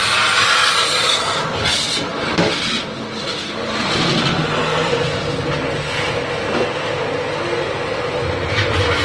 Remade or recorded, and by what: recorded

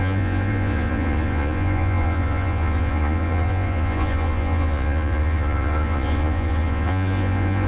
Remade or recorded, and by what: remade, vocoder, Vocos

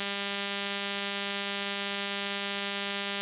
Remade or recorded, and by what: recorded